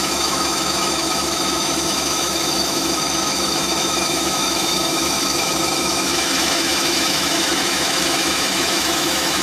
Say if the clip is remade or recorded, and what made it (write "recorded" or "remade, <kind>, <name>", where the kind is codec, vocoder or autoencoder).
remade, autoencoder, DAC-VAE